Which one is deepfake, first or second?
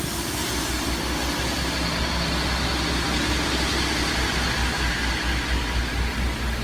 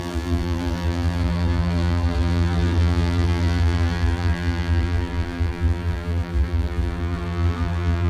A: second